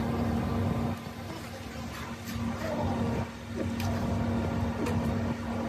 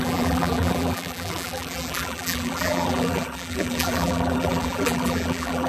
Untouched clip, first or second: first